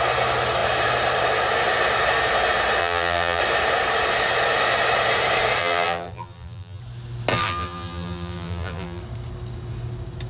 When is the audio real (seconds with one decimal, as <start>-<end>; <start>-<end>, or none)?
0.0-2.8; 3.4-5.6; 6.8-7.3; 9.0-10.3